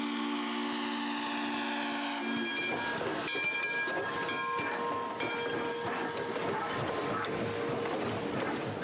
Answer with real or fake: real